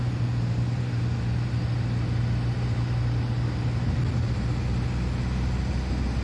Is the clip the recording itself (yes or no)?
yes